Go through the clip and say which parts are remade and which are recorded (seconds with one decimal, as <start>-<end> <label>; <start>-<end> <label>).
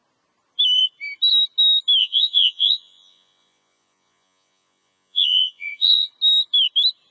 0.0-2.0 recorded; 2.0-6.1 remade; 6.1-7.1 recorded